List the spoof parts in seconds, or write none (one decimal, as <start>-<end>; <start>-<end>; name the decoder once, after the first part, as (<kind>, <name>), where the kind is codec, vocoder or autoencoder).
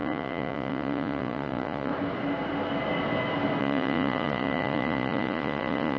0.0-1.9 (vocoder, Vocos); 3.6-6.0